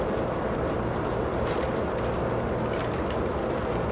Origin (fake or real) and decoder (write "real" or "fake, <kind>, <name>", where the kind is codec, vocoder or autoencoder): fake, vocoder, BigVGAN v2